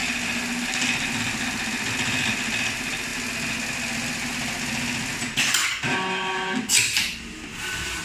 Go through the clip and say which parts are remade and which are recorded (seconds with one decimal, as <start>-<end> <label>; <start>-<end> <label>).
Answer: 0.0-8.0 recorded